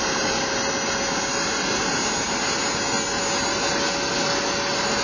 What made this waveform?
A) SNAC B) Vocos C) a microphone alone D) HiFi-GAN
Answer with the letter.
C